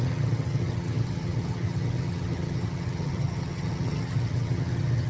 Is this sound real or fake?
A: fake